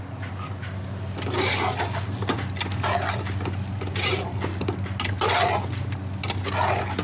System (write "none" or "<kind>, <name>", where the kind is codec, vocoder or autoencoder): none